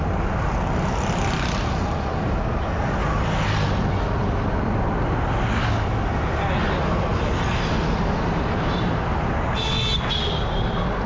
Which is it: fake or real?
real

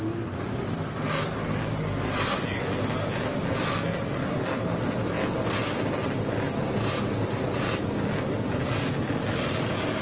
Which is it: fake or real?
real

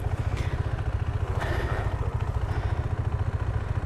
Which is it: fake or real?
real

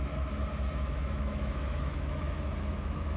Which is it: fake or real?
fake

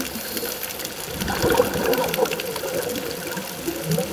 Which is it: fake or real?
real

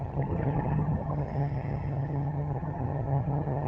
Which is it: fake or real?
fake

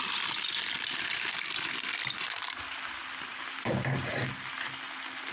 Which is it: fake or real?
real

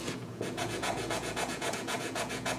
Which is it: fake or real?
fake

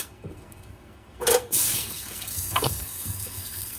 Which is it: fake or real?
fake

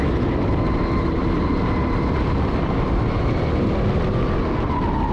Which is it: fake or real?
real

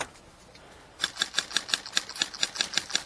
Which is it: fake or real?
fake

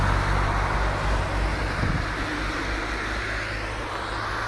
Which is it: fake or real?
real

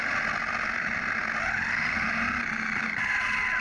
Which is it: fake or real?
real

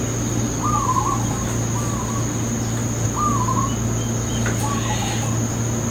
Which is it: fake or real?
real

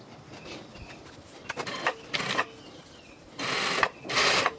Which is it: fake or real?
real